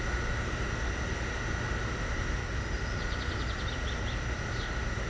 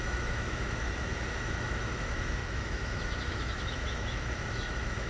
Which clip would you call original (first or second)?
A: first